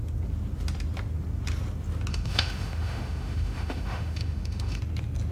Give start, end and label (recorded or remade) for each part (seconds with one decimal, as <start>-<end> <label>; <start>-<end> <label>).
0.0-2.1 recorded; 2.1-4.8 remade; 4.8-5.3 recorded